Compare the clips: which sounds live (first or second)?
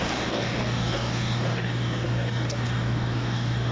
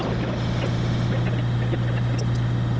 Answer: second